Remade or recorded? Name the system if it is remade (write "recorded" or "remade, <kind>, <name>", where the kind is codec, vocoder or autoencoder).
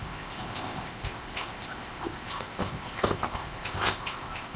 remade, codec, ZipCodec